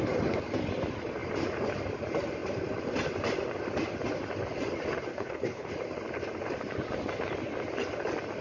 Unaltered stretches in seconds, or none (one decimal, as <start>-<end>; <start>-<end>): 0.0-5.1; 5.7-8.4

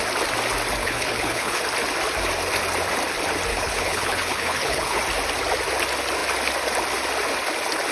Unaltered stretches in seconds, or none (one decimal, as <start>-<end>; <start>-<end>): 0.0-0.8; 1.6-3.5; 5.0-7.9

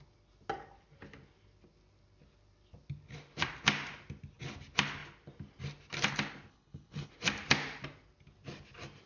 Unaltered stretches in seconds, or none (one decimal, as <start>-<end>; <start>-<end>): 0.0-6.5; 7.1-9.1

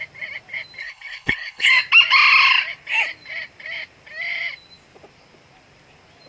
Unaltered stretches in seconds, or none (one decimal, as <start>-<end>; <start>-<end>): 0.0-0.8; 1.7-6.3

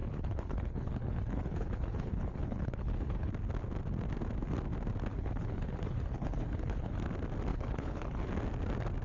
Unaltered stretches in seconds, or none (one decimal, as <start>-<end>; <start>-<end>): 3.3-5.1; 7.0-7.5; 8.3-9.0

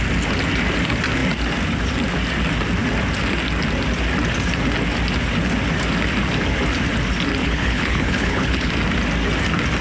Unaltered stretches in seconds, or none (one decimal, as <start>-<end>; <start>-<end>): 0.0-7.4; 8.7-9.8

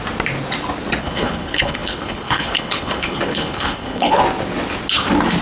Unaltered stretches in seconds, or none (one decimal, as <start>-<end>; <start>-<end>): 0.0-1.0; 4.2-5.4